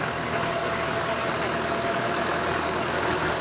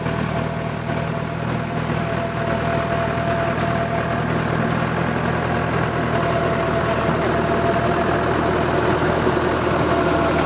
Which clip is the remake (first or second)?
first